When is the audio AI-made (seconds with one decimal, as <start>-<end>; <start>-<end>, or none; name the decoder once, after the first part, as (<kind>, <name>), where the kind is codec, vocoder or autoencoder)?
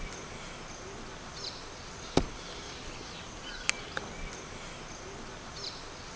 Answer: none